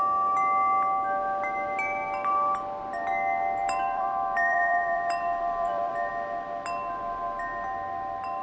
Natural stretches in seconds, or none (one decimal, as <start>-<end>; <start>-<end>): 0.0-3.6; 6.1-8.4